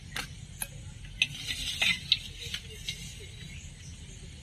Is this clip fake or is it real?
real